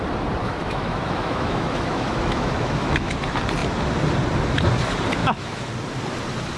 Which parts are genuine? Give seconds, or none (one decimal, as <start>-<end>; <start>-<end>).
0.0-0.4; 3.1-5.2; 5.7-6.6